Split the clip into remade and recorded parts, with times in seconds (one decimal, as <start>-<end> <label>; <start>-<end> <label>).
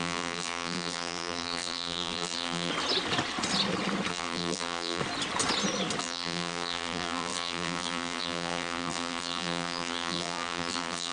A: 0.0-2.7 remade; 2.7-4.1 recorded; 4.1-5.0 remade; 5.0-6.0 recorded; 6.0-11.1 remade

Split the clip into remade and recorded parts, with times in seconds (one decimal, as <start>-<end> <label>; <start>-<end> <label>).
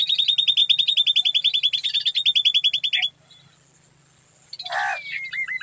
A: 0.0-5.6 recorded